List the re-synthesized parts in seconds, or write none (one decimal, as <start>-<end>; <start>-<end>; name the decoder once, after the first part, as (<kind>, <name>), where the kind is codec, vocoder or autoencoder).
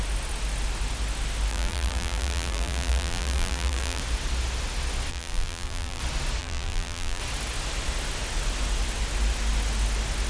1.5-4.0 (vocoder, BigVGAN v2); 5.1-6.0; 6.4-7.2